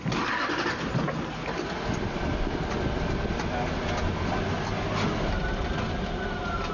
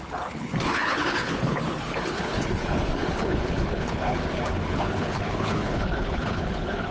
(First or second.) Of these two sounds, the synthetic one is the second